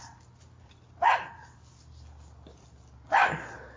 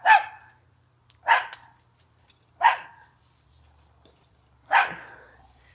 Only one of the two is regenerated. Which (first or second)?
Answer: second